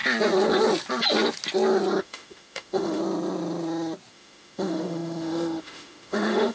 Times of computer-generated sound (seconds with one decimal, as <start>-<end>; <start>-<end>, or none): 2.0-3.0; 4.1-6.5